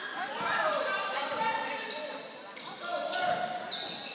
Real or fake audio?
fake